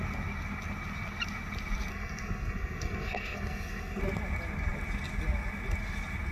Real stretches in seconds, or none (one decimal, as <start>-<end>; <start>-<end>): 0.0-1.9; 4.0-6.3